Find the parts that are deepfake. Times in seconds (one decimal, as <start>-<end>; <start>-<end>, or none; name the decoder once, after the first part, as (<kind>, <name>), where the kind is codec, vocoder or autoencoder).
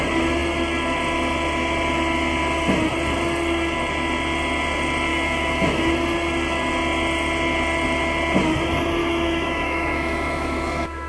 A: 5.1-5.9 (autoencoder, DAC-VAE); 9.0-11.1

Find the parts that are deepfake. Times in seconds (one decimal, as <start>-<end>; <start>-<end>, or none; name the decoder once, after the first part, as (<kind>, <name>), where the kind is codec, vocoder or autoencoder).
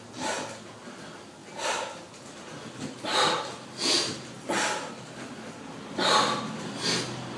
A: none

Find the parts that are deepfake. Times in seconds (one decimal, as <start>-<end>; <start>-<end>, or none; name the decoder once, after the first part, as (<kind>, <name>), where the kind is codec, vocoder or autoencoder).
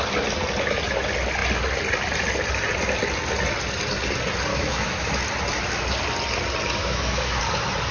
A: 4.5-5.1 (autoencoder, DAC-VAE); 6.8-7.4